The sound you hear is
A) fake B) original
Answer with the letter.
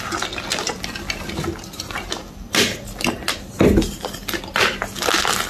B